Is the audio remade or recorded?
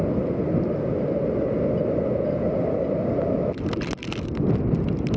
recorded